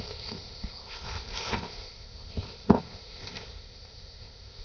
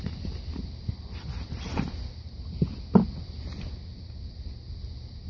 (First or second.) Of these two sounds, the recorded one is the second